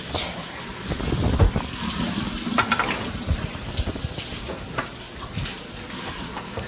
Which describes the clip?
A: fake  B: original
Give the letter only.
B